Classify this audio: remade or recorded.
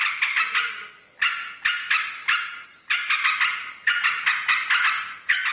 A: recorded